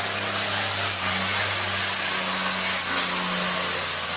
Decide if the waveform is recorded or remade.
recorded